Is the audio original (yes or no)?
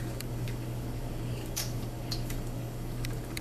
no